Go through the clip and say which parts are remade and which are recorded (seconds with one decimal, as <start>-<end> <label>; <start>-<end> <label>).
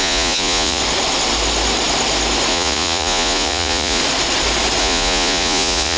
0.0-0.8 remade; 0.8-2.5 recorded; 2.5-4.0 remade; 4.0-4.8 recorded; 4.8-6.0 remade